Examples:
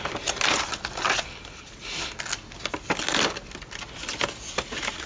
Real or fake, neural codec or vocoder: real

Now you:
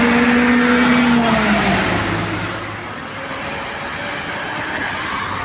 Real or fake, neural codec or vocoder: real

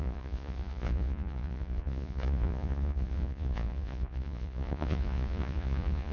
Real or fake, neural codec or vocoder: fake, vocoder, Vocos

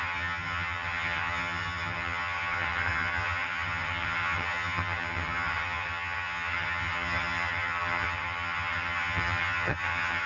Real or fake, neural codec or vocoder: fake, vocoder, HiFi-GAN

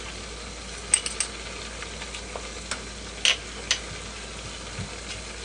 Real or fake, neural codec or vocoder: real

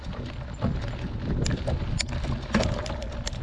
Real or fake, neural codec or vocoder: real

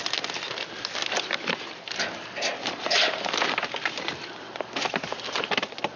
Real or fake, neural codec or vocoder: real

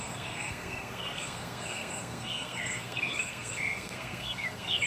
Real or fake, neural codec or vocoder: fake, codec, SNAC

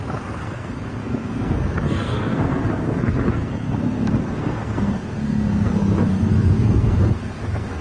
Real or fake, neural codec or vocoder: fake, codec, SNAC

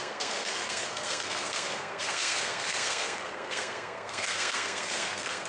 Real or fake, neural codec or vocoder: fake, codec, SNAC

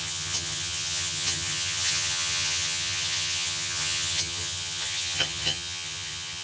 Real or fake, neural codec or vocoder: fake, vocoder, HiFi-GAN